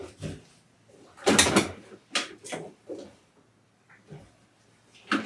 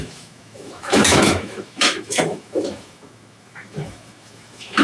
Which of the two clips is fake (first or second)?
second